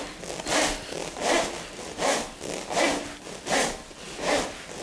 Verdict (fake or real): real